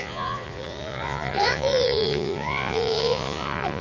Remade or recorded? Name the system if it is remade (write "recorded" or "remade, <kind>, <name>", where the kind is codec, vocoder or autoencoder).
remade, vocoder, Vocos